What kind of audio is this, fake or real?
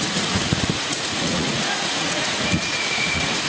fake